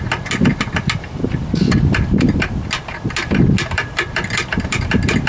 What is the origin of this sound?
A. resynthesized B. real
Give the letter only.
B